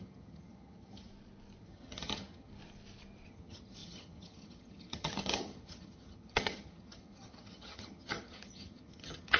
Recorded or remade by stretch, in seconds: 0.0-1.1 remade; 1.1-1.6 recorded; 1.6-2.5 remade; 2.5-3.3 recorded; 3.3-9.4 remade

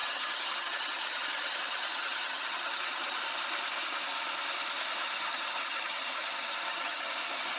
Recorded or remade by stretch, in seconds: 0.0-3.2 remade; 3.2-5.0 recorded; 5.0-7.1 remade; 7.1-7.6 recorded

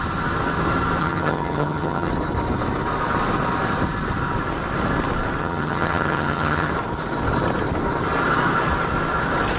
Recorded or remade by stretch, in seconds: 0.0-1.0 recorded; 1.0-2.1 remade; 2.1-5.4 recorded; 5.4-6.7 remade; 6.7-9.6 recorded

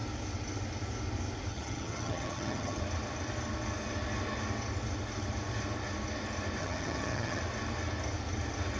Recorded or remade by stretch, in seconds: 0.0-1.5 recorded; 1.5-2.8 remade; 2.8-6.6 recorded; 6.6-7.4 remade; 7.4-8.8 recorded

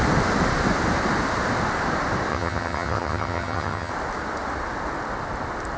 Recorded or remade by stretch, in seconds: 0.0-2.3 recorded; 2.3-3.9 remade; 3.9-5.8 recorded